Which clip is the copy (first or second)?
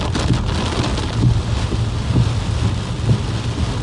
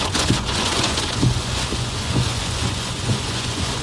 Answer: second